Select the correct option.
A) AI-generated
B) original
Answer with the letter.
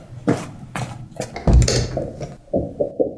B